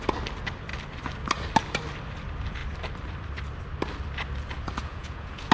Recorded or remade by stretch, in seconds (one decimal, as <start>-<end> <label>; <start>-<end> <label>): 0.0-4.8 recorded; 4.8-5.5 remade